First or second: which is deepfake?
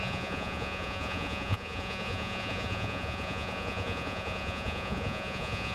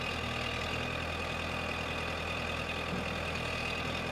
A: first